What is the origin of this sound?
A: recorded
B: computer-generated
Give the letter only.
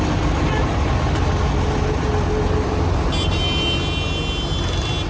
A